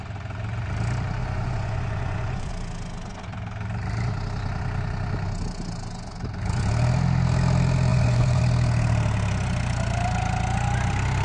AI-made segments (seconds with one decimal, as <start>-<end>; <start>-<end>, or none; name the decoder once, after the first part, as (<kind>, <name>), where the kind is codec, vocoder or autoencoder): 1.2-2.5 (vocoder, Vocos); 7.9-8.4